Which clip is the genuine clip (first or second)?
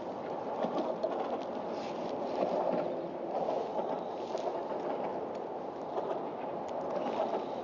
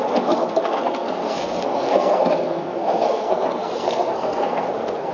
first